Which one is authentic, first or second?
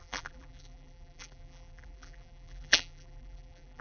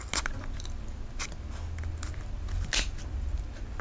second